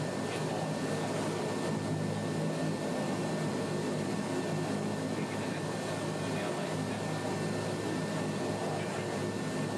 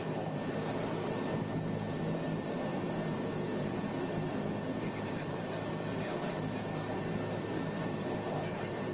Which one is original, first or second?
first